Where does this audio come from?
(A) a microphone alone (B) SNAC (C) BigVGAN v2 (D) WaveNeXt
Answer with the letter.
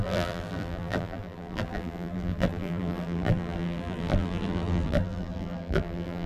C